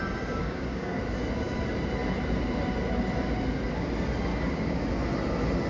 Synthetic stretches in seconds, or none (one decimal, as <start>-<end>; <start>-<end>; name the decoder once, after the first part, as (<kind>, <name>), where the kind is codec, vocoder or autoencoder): 0.4-1.0 (codec, DAC); 4.3-4.9